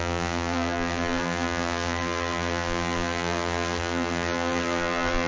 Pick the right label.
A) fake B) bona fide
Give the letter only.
A